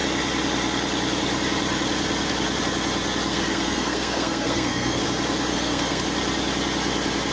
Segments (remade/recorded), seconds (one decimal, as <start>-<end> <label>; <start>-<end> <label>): 0.0-3.3 recorded; 3.3-5.0 remade; 5.0-5.5 recorded; 5.5-6.0 remade; 6.0-7.3 recorded